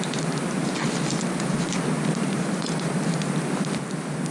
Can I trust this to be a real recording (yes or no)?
yes